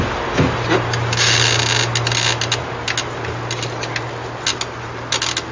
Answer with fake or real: real